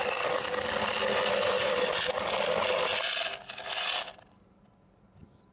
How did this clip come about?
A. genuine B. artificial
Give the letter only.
A